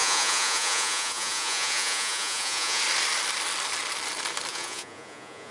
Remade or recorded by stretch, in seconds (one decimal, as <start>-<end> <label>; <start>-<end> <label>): 0.0-2.8 remade; 2.8-4.5 recorded; 4.5-5.5 remade